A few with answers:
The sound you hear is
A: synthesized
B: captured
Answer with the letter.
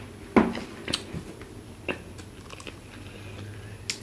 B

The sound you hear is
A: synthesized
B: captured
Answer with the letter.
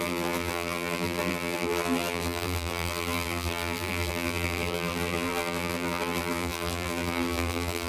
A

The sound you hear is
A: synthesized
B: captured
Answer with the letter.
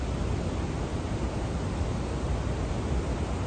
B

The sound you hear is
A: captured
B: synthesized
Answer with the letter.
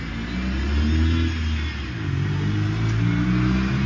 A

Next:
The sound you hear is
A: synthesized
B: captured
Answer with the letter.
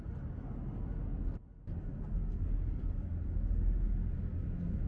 B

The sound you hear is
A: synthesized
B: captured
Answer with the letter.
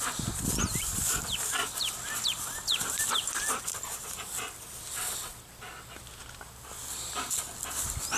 B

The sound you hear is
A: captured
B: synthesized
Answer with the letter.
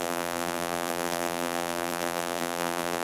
B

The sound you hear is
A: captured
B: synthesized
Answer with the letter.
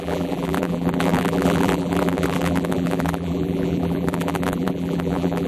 B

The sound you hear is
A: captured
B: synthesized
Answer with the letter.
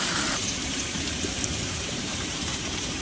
B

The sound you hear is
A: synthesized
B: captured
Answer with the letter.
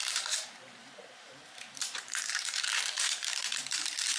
A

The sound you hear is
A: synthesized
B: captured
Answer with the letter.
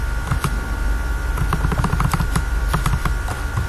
A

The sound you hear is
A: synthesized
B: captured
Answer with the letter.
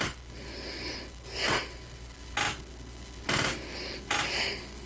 B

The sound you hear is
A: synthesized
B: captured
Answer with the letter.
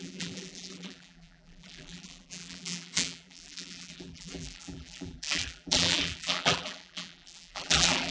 A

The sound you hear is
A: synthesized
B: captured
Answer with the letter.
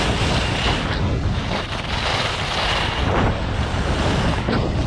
B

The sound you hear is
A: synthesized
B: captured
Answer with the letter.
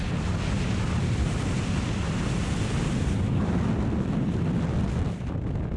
B